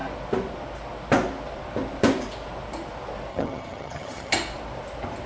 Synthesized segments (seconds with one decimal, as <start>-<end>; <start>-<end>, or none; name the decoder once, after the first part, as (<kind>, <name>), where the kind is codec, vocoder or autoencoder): 3.3-4.3 (vocoder, HiFi-GAN)